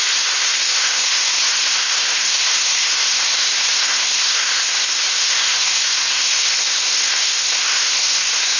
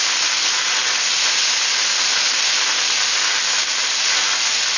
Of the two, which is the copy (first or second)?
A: first